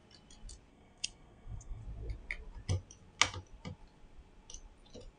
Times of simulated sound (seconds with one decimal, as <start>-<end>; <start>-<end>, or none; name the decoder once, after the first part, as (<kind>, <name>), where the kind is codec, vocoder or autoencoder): 0.7-1.8 (codec, SNAC)